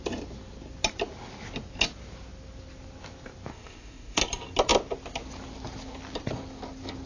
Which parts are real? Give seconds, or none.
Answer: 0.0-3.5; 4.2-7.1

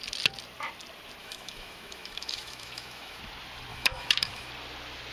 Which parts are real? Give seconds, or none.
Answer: 0.0-1.2; 3.2-3.7; 4.5-5.1

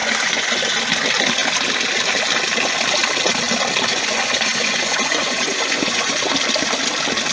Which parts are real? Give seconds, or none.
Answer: 0.7-3.9; 6.2-7.3

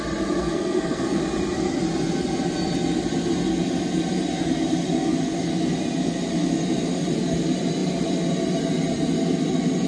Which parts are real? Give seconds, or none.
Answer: 0.0-0.4; 1.2-9.9

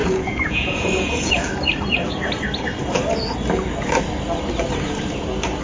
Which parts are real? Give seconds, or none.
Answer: 1.5-5.6

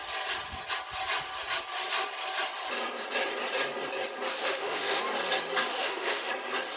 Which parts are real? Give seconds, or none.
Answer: 0.0-4.3; 5.0-5.7; 6.3-6.8

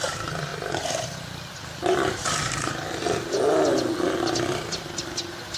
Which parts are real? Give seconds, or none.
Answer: 0.0-5.6

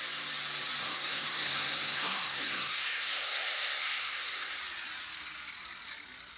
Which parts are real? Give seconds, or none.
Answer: 0.0-0.8; 4.6-6.4